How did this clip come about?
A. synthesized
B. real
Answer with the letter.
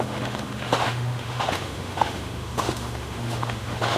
A